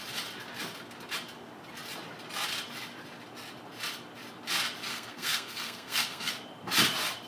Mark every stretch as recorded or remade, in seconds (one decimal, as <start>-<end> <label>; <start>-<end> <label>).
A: 0.0-4.9 recorded; 4.9-6.3 remade; 6.3-7.3 recorded